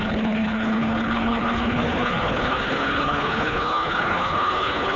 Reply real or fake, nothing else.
fake